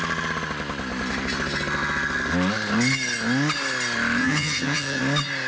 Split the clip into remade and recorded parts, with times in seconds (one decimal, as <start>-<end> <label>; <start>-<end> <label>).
0.0-4.2 recorded; 4.2-5.0 remade; 5.0-5.5 recorded